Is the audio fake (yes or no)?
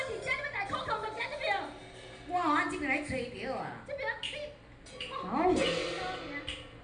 no